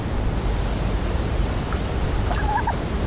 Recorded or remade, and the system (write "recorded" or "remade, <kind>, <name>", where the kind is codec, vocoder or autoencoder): recorded